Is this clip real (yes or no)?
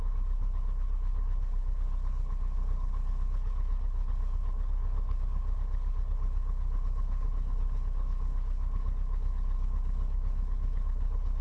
no